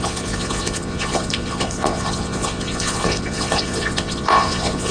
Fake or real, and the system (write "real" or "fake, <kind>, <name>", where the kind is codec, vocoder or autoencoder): fake, vocoder, Vocos